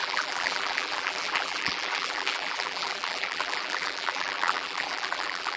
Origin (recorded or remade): remade